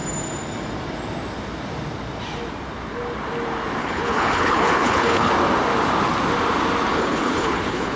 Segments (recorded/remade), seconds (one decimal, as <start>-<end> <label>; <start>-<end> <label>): 0.0-3.8 recorded; 3.8-5.3 remade; 5.3-6.9 recorded; 6.9-8.0 remade